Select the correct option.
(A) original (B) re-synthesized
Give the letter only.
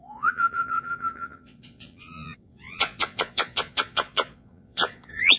B